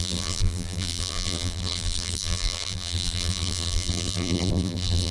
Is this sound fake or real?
fake